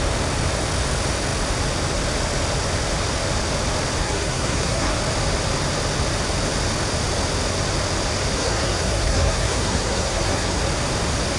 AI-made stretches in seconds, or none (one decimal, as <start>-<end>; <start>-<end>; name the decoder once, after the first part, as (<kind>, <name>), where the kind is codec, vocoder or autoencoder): 4.0-5.0 (codec, SNAC); 8.4-10.6